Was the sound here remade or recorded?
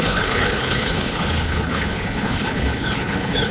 remade